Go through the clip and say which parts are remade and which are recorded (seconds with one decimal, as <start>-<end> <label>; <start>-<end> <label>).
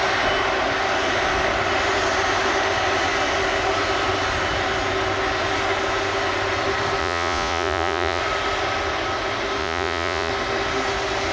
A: 0.0-7.0 recorded; 7.0-8.2 remade; 8.2-9.6 recorded; 9.6-10.3 remade; 10.3-11.3 recorded